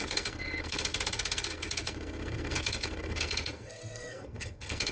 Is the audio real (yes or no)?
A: no